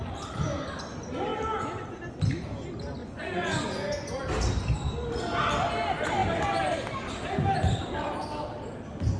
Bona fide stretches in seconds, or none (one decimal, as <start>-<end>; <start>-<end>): 0.0-3.0; 4.2-9.2